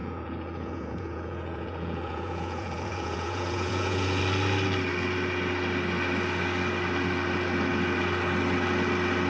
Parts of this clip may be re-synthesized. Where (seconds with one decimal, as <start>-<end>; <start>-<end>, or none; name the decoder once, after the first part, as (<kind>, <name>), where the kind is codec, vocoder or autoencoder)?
0.0-4.2 (vocoder, Vocos)